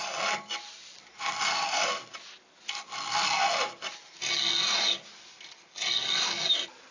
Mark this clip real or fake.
real